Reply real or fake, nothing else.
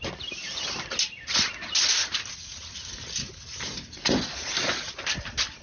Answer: real